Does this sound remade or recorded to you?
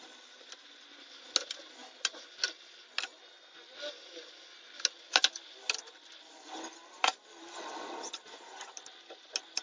recorded